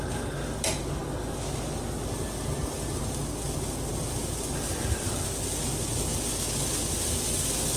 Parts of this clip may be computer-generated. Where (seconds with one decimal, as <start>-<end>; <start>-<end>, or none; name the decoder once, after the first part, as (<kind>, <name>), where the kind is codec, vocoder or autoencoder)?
none